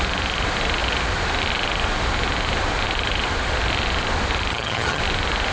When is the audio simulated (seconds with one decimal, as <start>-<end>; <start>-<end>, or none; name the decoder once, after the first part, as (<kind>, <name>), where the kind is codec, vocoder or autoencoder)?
4.5-5.0 (vocoder, HiFi-GAN)